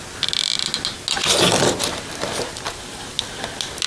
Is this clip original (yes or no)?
yes